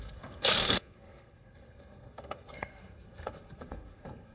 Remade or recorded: remade